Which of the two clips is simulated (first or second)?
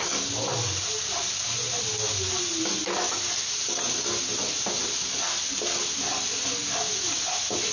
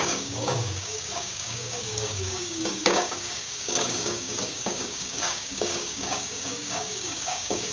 second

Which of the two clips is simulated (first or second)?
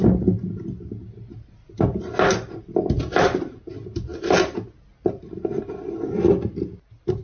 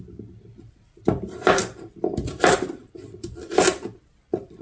second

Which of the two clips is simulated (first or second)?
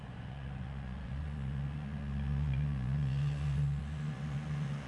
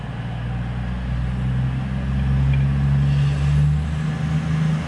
first